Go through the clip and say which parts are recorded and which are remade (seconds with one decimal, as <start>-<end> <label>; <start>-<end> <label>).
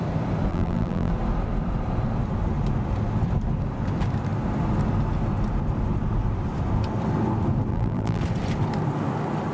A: 0.0-0.5 recorded; 0.5-1.1 remade; 1.1-7.7 recorded; 7.7-8.2 remade; 8.2-9.5 recorded